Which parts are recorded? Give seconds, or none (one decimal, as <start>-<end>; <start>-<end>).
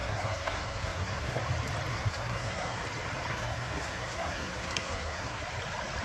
1.4-1.9; 2.8-3.3; 5.4-6.0